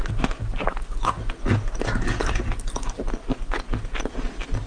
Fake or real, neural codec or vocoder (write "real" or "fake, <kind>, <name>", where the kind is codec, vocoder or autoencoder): real